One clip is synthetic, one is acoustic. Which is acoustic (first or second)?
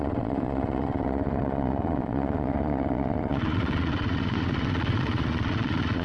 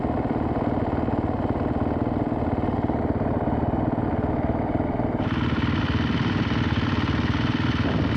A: second